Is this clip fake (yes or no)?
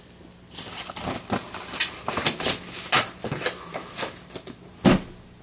no